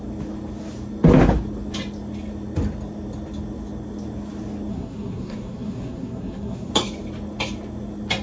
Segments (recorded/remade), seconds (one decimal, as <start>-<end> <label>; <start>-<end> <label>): 0.0-4.7 recorded; 4.7-6.7 remade; 6.7-8.2 recorded